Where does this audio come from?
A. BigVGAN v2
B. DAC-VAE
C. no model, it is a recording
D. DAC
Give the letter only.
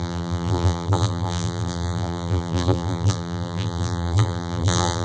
A